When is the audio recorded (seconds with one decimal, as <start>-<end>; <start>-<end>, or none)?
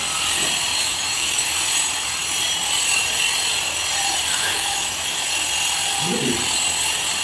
0.0-0.7; 1.5-4.3; 5.3-7.2